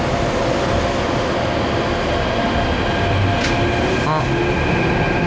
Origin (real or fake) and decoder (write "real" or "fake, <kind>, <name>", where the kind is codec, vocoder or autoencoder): real